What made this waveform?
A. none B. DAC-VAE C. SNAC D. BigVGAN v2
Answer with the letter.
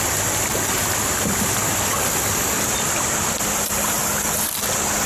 A